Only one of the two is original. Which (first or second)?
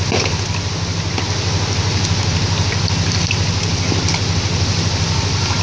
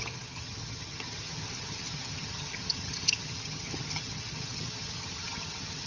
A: first